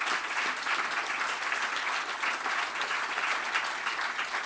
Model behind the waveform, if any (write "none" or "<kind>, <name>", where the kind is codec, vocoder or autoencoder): none